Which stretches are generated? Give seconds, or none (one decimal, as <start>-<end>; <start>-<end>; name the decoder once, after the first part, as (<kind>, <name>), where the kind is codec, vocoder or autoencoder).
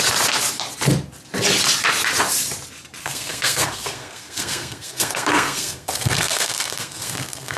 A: 3.0-7.6 (codec, SNAC)